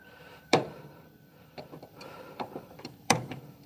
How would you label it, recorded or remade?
remade